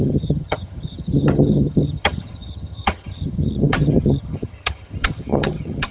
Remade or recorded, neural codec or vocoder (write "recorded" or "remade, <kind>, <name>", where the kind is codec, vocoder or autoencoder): remade, vocoder, HiFi-GAN